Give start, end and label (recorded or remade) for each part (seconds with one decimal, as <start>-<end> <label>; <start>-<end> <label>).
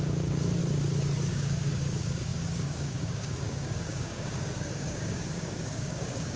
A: 0.0-0.6 remade; 0.6-1.3 recorded; 1.3-6.4 remade